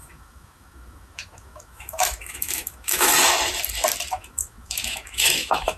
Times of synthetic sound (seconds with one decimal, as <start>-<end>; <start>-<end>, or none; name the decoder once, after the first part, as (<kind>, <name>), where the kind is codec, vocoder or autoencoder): 0.0-3.1 (autoencoder, DAC-VAE); 4.1-5.8